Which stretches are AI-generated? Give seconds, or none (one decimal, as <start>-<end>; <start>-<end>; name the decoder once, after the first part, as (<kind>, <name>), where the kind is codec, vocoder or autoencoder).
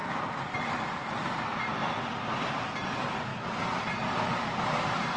0.0-5.2 (vocoder, BigVGAN v2)